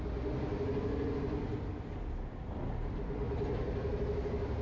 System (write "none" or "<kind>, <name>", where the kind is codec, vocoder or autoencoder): none